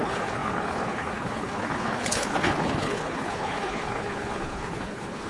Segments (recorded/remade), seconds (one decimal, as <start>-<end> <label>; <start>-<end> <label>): 0.0-5.3 remade